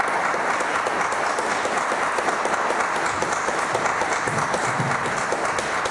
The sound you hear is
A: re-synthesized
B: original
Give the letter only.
B